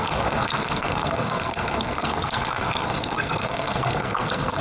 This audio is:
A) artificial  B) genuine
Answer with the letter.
A